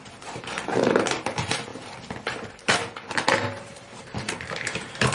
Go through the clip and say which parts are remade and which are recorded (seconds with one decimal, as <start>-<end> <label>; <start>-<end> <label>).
0.0-1.7 remade; 1.7-2.5 recorded; 2.5-5.1 remade